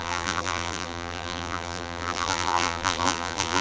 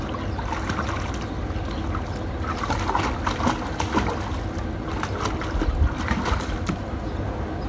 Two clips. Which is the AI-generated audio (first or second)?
first